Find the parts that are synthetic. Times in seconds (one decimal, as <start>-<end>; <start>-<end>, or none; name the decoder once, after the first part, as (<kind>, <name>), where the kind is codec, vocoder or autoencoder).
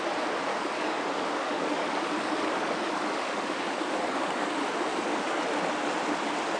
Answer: 0.5-4.5 (codec, DAC); 4.9-5.4